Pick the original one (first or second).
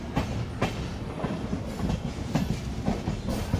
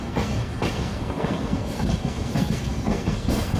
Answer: first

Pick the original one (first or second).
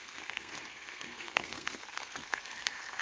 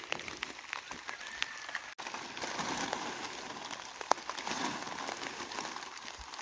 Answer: second